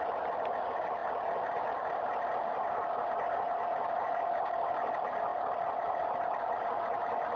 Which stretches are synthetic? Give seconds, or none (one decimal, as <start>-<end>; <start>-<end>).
none